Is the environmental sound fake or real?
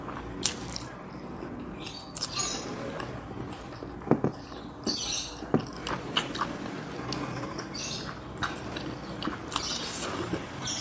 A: real